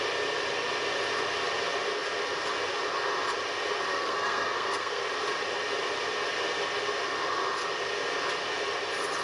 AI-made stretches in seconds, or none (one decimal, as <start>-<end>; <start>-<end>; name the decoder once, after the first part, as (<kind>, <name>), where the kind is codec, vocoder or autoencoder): 3.9-5.0 (codec, SNAC)